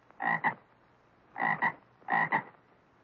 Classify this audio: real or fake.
real